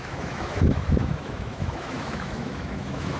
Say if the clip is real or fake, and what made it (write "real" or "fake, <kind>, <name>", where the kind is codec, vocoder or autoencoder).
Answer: fake, autoencoder, DAC-VAE